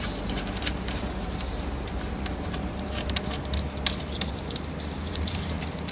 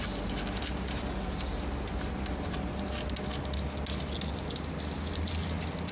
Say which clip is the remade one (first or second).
first